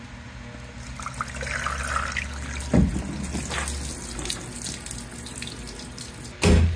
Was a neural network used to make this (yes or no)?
no